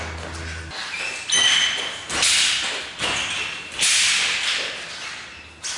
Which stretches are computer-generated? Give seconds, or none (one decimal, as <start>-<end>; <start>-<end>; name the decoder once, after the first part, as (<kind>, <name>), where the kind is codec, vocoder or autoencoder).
none